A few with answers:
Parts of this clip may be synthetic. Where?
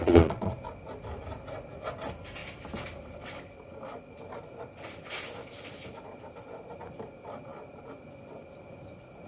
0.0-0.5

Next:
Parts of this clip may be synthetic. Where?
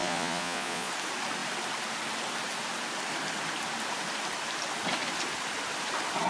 0.0-0.9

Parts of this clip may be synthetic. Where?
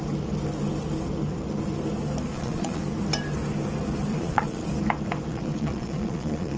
2.3-2.8; 4.1-4.7; 5.3-6.6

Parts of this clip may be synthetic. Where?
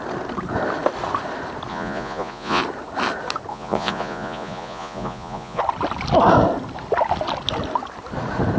1.7-2.6; 3.5-5.6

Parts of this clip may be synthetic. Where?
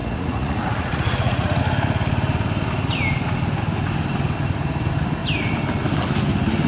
0.0-1.6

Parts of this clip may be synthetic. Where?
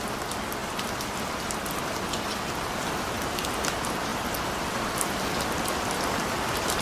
none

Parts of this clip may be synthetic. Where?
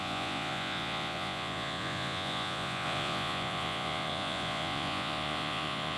0.0-6.0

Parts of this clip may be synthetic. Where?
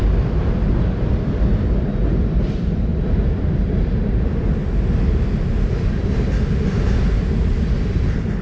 none